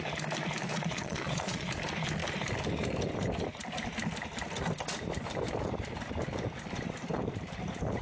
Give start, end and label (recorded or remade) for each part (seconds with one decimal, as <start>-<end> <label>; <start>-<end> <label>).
0.0-0.7 recorded; 0.7-1.7 remade; 1.7-8.0 recorded